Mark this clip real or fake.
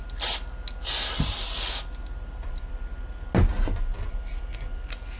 real